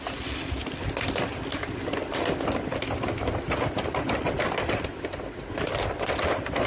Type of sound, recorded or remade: recorded